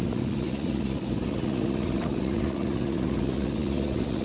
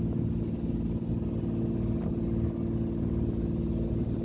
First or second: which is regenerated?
first